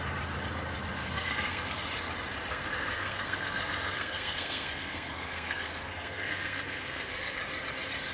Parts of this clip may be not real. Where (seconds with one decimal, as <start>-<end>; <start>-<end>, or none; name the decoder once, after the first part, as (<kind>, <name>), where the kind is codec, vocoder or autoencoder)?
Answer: 1.0-1.8 (codec, SNAC); 2.5-7.4